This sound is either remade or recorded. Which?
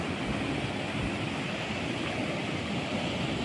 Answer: recorded